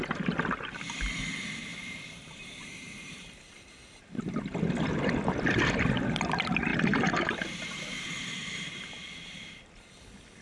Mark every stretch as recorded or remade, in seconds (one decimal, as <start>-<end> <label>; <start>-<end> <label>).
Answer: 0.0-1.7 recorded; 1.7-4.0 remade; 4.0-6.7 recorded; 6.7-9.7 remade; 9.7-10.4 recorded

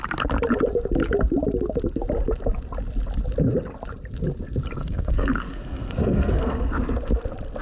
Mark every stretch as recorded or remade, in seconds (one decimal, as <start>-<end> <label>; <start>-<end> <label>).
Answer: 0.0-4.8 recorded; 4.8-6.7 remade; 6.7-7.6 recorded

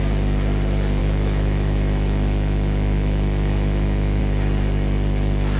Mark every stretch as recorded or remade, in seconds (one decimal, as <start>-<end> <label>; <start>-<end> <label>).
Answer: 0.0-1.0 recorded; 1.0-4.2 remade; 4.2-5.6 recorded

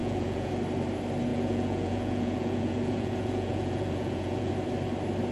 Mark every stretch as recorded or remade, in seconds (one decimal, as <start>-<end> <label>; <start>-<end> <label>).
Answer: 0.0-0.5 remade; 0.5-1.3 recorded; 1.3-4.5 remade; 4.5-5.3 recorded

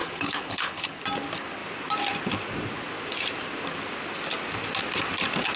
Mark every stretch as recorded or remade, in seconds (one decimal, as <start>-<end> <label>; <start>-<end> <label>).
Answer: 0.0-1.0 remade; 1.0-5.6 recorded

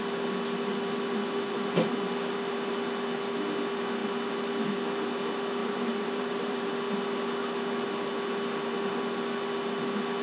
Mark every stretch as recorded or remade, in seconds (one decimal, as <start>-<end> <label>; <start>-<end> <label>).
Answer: 0.0-5.6 recorded; 5.6-6.7 remade; 6.7-10.2 recorded

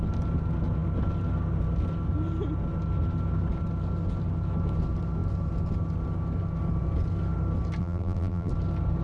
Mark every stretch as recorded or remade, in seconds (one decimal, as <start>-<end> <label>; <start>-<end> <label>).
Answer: 0.0-7.8 recorded; 7.8-8.5 remade; 8.5-9.0 recorded

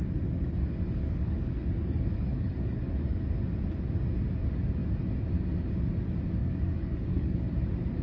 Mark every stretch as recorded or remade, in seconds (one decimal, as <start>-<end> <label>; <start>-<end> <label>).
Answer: 0.0-1.0 recorded; 1.0-3.2 remade; 3.2-6.4 recorded; 6.4-7.5 remade; 7.5-8.0 recorded